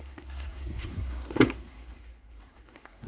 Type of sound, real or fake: fake